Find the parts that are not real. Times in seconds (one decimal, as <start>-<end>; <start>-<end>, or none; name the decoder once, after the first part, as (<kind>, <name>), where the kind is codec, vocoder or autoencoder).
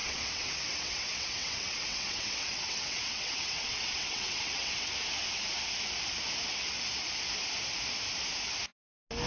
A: 0.0-4.9 (vocoder, WaveNeXt)